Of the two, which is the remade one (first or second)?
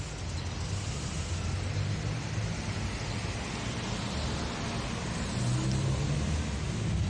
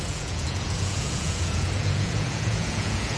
second